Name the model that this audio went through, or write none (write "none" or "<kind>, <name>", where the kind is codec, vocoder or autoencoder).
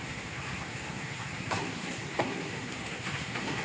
codec, SNAC